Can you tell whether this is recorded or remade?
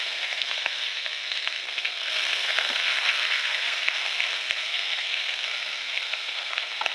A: remade